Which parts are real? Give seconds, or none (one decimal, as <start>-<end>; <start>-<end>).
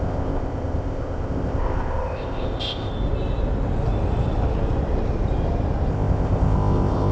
2.9-5.9